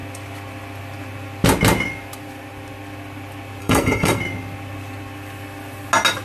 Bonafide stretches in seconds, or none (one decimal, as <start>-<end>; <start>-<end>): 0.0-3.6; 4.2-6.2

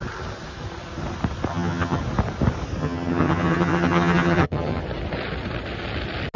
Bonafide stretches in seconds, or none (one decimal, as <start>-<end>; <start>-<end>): 0.0-1.5; 2.0-2.8; 4.8-6.4

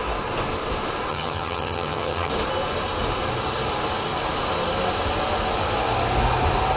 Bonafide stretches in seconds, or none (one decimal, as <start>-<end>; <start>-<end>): 0.0-1.1; 2.3-6.8